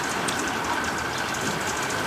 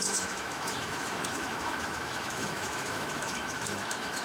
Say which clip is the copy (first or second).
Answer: second